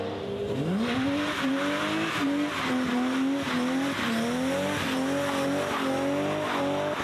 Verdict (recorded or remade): recorded